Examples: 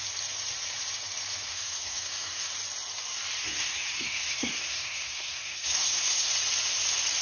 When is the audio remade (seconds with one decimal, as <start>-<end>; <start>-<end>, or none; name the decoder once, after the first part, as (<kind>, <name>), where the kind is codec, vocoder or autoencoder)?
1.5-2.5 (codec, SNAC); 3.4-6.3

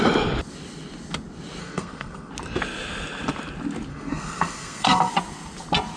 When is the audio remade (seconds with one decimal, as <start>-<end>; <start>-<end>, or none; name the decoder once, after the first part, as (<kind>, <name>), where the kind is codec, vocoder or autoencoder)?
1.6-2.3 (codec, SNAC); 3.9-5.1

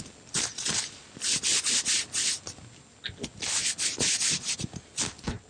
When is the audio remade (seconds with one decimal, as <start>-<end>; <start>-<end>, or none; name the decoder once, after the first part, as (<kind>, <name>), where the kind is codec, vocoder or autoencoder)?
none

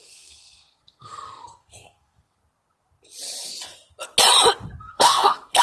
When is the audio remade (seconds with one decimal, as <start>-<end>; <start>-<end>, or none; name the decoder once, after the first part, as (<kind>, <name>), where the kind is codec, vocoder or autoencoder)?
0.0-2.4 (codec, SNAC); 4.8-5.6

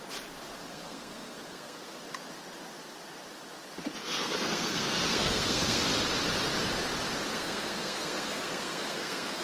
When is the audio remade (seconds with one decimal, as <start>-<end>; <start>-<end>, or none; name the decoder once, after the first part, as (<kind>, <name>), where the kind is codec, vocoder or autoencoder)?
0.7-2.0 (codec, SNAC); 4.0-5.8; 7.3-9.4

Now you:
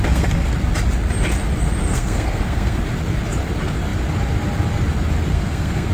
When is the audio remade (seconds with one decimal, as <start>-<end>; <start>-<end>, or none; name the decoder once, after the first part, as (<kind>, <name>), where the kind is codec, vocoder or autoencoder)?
0.0-0.5 (codec, SNAC); 1.9-2.8; 5.3-5.9

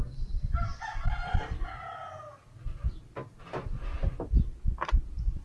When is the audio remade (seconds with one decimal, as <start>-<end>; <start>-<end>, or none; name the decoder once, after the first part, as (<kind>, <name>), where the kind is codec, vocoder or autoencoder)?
none